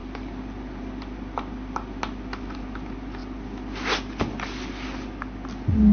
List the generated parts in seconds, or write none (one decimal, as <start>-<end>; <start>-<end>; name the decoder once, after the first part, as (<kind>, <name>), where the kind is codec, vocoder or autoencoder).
none